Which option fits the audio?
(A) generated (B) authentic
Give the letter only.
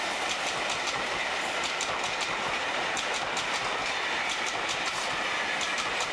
B